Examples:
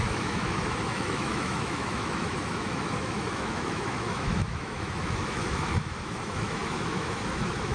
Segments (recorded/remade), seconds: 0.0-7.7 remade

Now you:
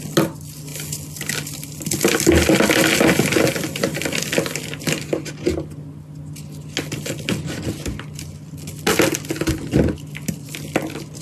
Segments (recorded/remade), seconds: 0.0-11.2 recorded

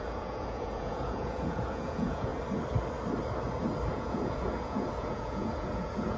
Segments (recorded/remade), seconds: 0.0-2.3 remade; 2.3-3.9 recorded; 3.9-6.2 remade

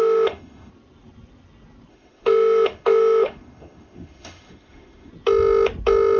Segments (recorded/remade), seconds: 0.0-0.7 remade; 0.7-1.9 recorded; 1.9-5.1 remade; 5.1-6.2 recorded

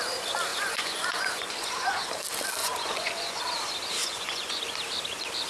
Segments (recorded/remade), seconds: 0.0-0.5 recorded; 0.5-2.1 remade; 2.1-2.6 recorded; 2.6-3.4 remade; 3.4-4.0 recorded; 4.0-4.6 remade; 4.6-5.5 recorded

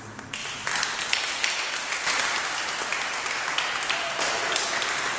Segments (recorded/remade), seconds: 0.0-5.2 recorded

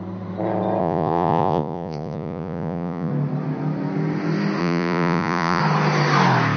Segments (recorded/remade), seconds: 0.0-0.8 recorded; 0.8-3.1 remade; 3.1-4.6 recorded; 4.6-5.6 remade; 5.6-6.6 recorded

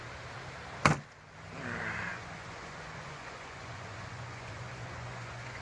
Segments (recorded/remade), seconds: 0.0-2.1 recorded; 2.1-5.6 remade